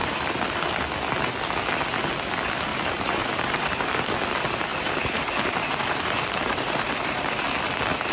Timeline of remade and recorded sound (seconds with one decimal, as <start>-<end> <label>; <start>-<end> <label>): 0.0-0.6 remade; 0.6-2.7 recorded; 2.7-3.9 remade; 3.9-4.7 recorded; 4.7-7.3 remade; 7.3-8.1 recorded